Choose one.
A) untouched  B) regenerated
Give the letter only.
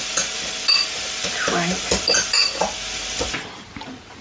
A